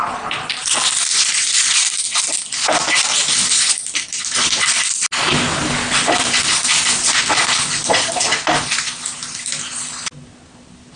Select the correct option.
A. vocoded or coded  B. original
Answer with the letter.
B